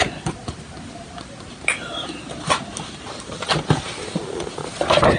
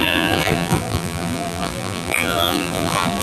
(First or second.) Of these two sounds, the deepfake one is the second